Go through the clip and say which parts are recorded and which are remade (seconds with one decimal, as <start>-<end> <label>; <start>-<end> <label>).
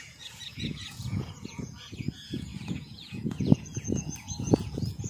0.0-5.1 remade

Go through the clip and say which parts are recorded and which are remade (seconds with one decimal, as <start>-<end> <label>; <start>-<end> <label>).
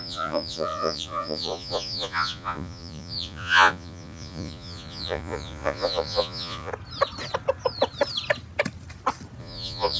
0.0-6.7 remade; 6.7-9.4 recorded; 9.4-10.0 remade